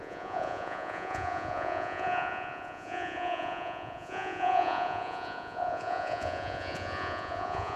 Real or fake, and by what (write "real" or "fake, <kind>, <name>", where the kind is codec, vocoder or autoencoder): fake, vocoder, Vocos